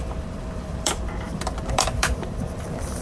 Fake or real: fake